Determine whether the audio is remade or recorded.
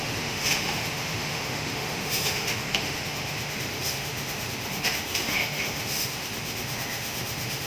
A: remade